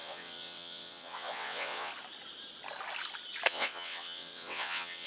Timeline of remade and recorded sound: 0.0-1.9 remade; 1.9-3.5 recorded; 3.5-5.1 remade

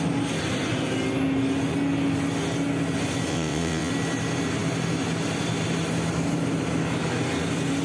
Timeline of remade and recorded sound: 0.0-3.3 recorded; 3.3-3.9 remade; 3.9-7.8 recorded

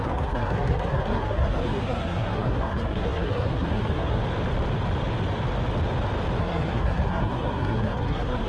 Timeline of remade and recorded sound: 0.0-4.2 remade; 4.2-6.4 recorded; 6.4-8.5 remade

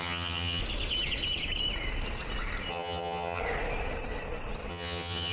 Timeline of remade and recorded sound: 0.0-0.6 remade; 0.6-2.7 recorded; 2.7-3.4 remade; 3.4-4.7 recorded; 4.7-5.3 remade

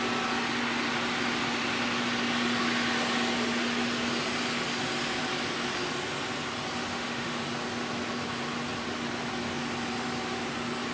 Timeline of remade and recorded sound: 0.0-6.9 recorded; 6.9-7.4 remade; 7.4-10.9 recorded

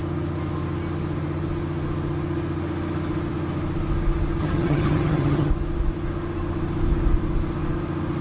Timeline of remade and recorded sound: 0.0-4.4 recorded; 4.4-5.5 remade; 5.5-8.2 recorded

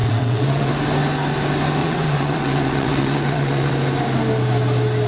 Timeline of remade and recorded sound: 0.0-0.7 remade; 0.7-1.8 recorded; 1.8-3.7 remade; 3.7-5.1 recorded

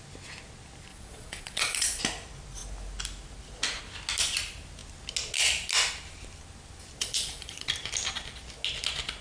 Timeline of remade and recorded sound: 0.0-0.9 recorded; 0.9-2.0 remade; 2.0-7.0 recorded; 7.0-7.7 remade; 7.7-9.2 recorded